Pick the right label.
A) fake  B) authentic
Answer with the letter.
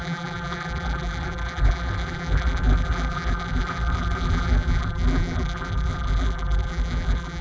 A